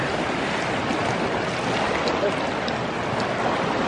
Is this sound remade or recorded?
recorded